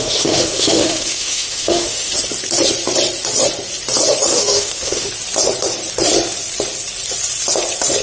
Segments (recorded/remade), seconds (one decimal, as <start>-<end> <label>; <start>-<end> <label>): 0.0-2.1 remade; 2.1-4.3 recorded; 4.3-5.1 remade; 5.1-8.0 recorded